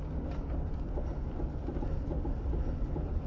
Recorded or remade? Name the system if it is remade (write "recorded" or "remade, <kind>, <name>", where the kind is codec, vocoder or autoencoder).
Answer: recorded